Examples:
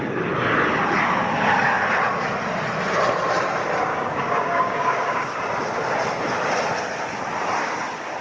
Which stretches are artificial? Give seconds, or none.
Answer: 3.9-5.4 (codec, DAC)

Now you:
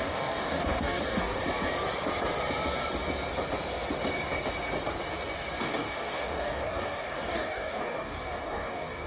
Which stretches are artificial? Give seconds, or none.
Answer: 0.0-1.4 (codec, DAC); 5.6-9.1